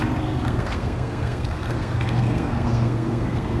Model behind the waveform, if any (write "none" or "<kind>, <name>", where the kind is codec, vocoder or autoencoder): codec, SNAC